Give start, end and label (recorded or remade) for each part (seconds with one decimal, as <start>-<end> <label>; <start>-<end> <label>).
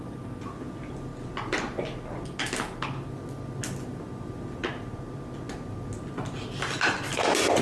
0.0-7.6 recorded